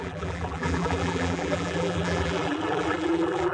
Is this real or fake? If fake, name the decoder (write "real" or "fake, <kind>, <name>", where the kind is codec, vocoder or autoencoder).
fake, vocoder, BigVGAN v2